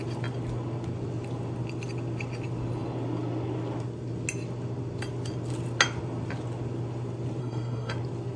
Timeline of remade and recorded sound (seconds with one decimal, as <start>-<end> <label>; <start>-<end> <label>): 0.0-7.4 recorded; 7.4-7.9 remade; 7.9-8.4 recorded